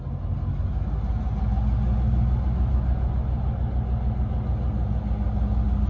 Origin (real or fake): real